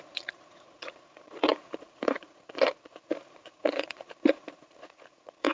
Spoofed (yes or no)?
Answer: yes